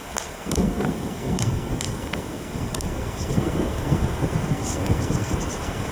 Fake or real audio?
fake